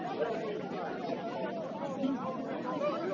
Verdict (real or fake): real